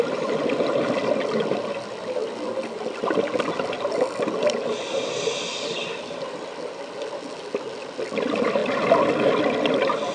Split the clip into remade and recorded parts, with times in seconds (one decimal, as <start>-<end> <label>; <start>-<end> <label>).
0.0-10.1 recorded